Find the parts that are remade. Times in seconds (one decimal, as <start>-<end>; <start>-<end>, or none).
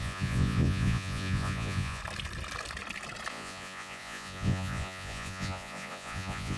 0.0-2.0; 3.3-6.6